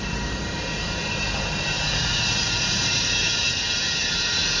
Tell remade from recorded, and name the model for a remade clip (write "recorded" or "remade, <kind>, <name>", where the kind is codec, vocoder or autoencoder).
remade, vocoder, BigVGAN v2